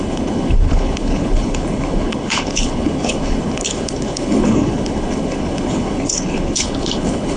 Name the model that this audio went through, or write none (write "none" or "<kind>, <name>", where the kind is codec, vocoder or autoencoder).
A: codec, HILCodec